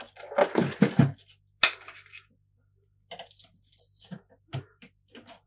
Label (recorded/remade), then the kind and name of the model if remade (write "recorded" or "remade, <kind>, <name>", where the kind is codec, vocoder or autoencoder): recorded